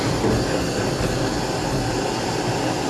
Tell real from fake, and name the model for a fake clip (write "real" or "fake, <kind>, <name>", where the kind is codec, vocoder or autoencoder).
real